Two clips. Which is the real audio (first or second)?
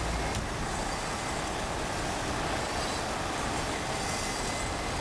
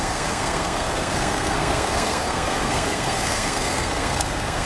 first